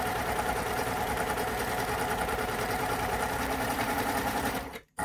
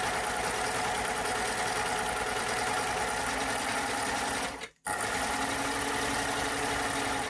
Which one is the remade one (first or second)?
first